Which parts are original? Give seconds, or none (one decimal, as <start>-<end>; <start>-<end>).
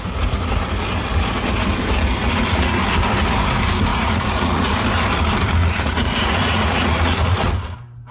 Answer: 0.0-2.2; 2.8-3.9; 4.8-5.6; 7.5-8.1